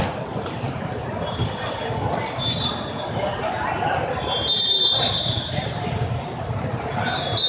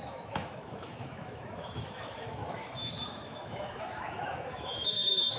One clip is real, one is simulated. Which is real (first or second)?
first